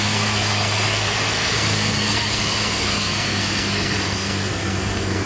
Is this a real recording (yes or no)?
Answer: no